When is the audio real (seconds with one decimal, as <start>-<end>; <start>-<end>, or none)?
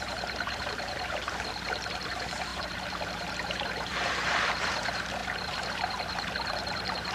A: none